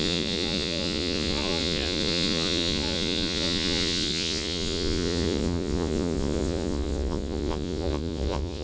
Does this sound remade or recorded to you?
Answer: remade